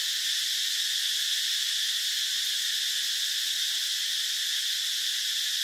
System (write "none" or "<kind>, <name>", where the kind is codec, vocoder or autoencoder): none